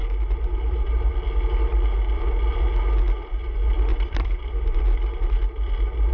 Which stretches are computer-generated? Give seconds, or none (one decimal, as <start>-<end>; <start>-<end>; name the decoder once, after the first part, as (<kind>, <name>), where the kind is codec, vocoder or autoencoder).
0.0-1.1 (vocoder, BigVGAN v2); 3.9-4.8

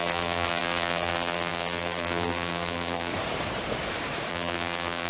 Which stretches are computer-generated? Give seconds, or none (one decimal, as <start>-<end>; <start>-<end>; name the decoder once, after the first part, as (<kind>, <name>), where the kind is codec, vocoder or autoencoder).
0.0-3.1 (vocoder, BigVGAN v2); 4.3-5.1

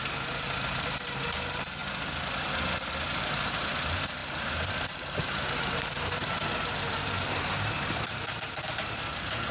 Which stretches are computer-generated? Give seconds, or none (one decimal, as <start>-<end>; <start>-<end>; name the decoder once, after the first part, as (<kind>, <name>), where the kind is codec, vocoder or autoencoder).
0.0-1.8 (vocoder, BigVGAN v2); 3.2-9.5

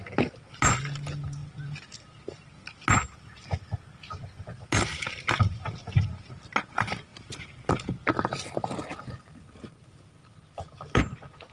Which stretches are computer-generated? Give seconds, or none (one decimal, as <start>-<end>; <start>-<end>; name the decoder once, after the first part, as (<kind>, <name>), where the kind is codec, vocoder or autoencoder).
none

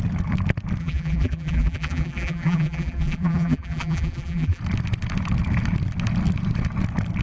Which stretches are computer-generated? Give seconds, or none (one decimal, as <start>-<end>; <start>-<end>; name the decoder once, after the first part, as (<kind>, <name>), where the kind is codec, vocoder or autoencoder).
0.8-4.6 (vocoder, BigVGAN v2)

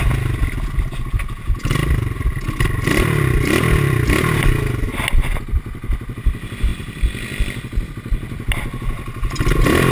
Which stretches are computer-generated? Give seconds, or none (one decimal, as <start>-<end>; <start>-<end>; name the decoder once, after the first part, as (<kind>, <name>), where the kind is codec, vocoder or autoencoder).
1.8-4.9 (vocoder, BigVGAN v2); 6.7-7.9

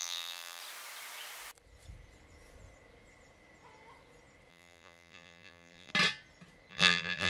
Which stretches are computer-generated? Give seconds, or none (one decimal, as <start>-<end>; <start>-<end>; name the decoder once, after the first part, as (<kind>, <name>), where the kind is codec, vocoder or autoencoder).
0.0-0.6 (vocoder, BigVGAN v2); 4.5-5.9; 6.7-7.3

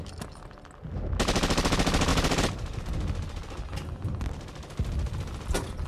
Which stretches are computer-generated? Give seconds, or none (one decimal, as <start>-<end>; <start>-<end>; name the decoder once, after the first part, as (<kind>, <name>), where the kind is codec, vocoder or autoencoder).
2.1-2.8 (vocoder, BigVGAN v2)